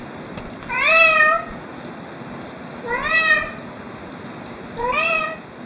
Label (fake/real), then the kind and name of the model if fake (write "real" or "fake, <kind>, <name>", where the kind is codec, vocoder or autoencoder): real